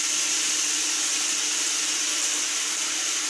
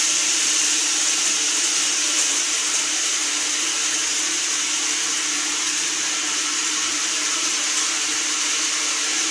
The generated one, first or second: second